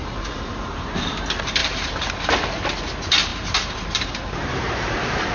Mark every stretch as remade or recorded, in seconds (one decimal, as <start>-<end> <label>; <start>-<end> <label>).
0.0-1.1 remade; 1.1-1.6 recorded; 1.6-2.3 remade; 2.3-3.3 recorded; 3.3-5.3 remade